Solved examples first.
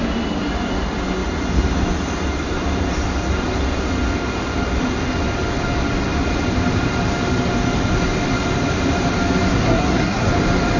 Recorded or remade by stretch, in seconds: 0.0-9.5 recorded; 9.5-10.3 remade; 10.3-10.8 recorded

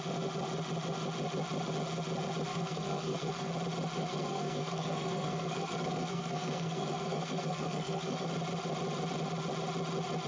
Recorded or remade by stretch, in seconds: 0.0-2.5 recorded; 2.5-3.5 remade; 3.5-4.0 recorded; 4.0-8.3 remade; 8.3-10.3 recorded

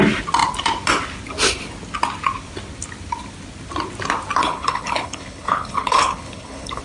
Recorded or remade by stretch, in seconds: 0.0-4.4 recorded; 4.4-6.8 remade

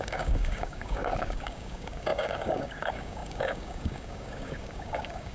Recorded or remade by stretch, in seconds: 0.0-5.3 remade

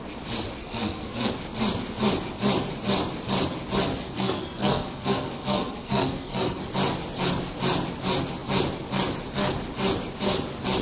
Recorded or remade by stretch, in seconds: 0.0-0.6 recorded; 0.6-1.3 remade; 1.3-3.9 recorded; 3.9-6.6 remade; 6.6-10.8 recorded

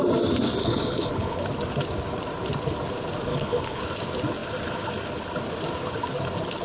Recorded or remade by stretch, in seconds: 0.0-0.6 recorded; 0.6-1.4 remade; 1.4-3.3 recorded; 3.3-3.8 remade; 3.8-6.6 recorded

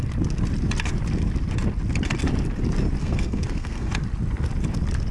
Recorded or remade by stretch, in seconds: 0.0-3.0 recorded; 3.0-3.9 remade; 3.9-5.1 recorded

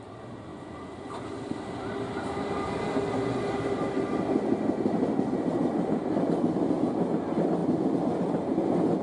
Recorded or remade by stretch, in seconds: 0.0-0.5 recorded; 0.5-1.1 remade; 1.1-9.0 recorded